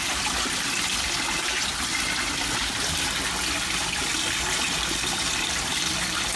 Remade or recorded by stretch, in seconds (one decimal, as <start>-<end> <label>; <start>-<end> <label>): 0.0-5.7 recorded; 5.7-6.4 remade